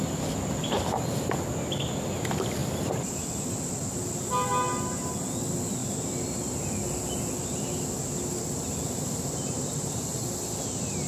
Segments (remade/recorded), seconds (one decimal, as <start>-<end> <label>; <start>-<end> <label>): 0.0-11.1 recorded